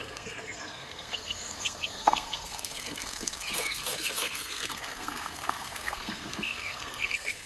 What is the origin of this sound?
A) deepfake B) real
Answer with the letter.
A